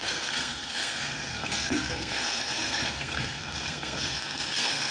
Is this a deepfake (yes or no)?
yes